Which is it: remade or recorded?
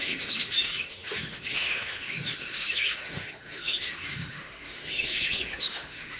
remade